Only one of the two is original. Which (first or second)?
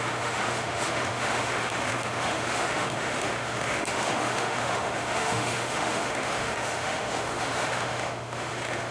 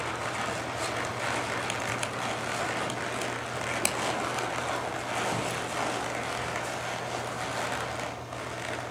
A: second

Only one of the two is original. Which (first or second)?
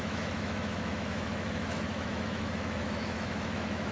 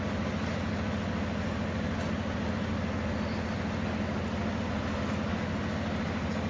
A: second